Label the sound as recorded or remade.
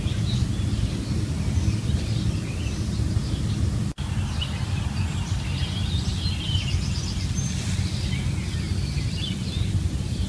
recorded